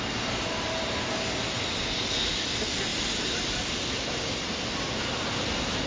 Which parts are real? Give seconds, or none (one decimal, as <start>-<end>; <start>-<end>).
0.0-5.9